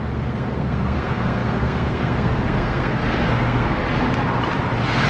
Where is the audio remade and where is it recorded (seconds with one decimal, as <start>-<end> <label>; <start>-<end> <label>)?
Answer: 0.0-3.8 remade; 3.8-5.1 recorded